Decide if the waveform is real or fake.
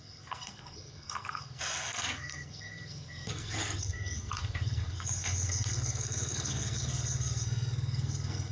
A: fake